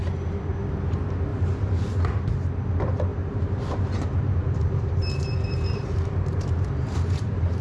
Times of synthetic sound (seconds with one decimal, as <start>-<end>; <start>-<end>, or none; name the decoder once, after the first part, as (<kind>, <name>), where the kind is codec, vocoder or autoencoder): 0.0-0.5 (vocoder, BigVGAN v2); 1.3-2.0; 3.1-7.6